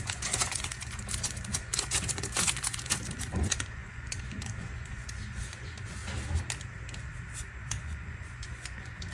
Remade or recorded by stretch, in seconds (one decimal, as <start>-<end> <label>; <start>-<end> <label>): 0.0-6.0 remade; 6.0-7.4 recorded; 7.4-9.1 remade